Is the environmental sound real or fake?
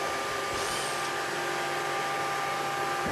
real